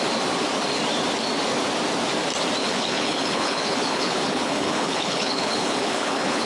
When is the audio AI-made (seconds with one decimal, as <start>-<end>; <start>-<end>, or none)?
2.6-6.5